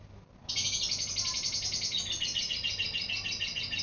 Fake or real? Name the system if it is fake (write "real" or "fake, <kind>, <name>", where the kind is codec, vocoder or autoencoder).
real